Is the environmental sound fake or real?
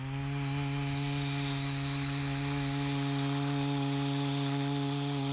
real